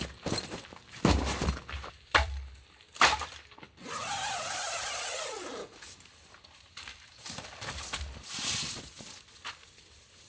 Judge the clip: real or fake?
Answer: real